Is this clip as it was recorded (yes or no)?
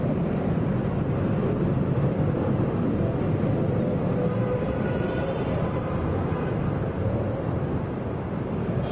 no